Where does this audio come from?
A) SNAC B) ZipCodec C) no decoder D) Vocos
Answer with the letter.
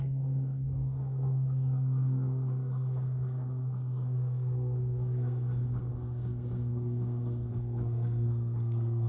A